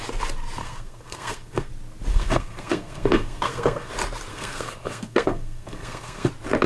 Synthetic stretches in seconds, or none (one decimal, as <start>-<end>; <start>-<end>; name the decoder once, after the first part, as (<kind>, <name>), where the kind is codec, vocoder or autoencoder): 0.6-1.7 (codec, SNAC); 2.1-3.9; 4.3-6.3